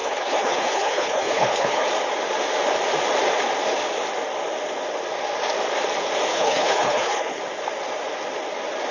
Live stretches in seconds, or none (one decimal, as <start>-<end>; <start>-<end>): 1.9-6.3; 7.4-8.9